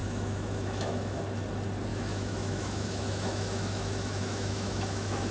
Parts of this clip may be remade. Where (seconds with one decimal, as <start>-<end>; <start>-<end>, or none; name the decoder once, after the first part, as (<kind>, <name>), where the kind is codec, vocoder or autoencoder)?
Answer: 0.0-1.2 (autoencoder, DAC-VAE); 1.9-5.3